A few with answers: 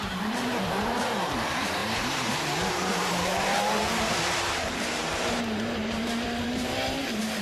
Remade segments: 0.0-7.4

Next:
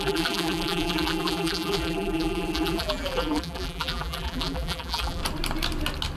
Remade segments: 0.0-5.2

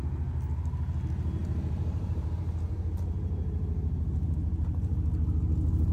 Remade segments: 1.4-4.9

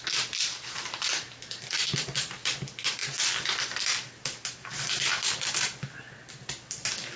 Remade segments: none